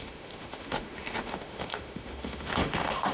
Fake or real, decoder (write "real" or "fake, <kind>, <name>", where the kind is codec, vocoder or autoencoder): fake, autoencoder, DAC-VAE